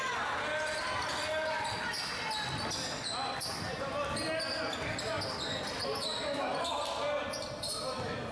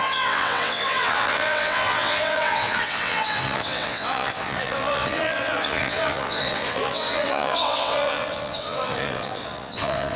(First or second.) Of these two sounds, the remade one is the second